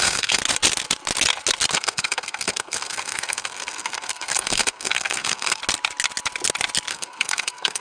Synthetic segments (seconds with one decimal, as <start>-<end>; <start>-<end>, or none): 0.0-0.4; 1.7-5.6; 6.9-7.8